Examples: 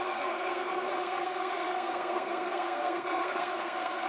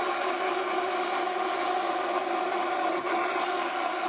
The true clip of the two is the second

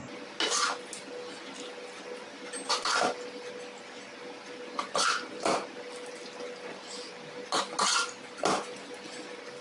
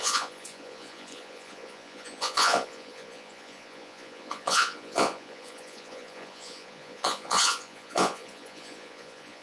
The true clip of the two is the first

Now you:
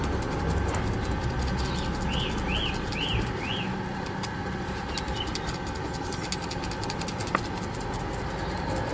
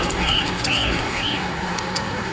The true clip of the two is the first